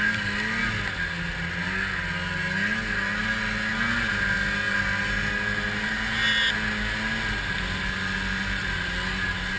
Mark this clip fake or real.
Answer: real